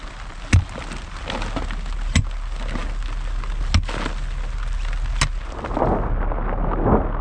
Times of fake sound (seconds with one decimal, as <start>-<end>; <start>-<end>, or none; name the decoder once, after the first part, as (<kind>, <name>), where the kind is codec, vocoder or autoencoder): none